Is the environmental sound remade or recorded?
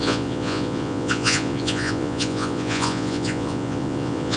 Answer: remade